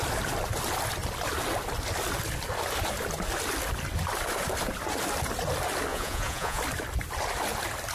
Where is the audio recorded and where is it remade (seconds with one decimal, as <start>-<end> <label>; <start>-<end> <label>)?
0.0-5.9 recorded; 5.9-6.6 remade; 6.6-7.9 recorded